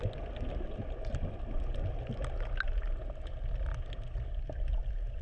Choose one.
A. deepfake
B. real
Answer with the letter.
B